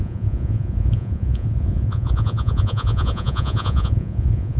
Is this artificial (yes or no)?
yes